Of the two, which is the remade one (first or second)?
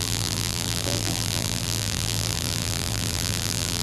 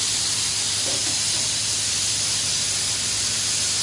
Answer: first